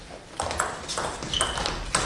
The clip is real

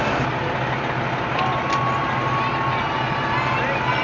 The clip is real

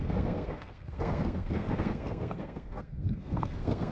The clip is fake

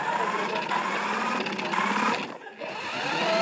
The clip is real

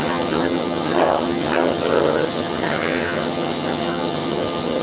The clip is fake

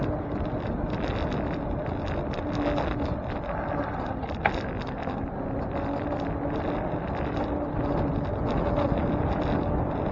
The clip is real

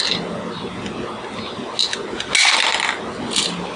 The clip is real